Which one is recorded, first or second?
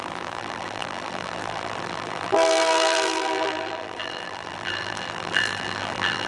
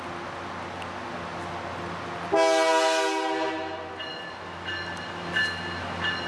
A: second